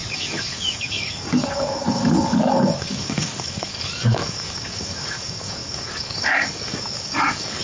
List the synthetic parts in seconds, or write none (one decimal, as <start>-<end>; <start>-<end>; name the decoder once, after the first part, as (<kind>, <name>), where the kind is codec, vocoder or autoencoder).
0.0-7.6 (codec, DAC)